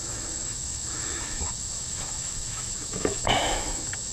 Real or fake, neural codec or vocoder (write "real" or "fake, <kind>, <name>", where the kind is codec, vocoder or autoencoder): fake, autoencoder, DAC-VAE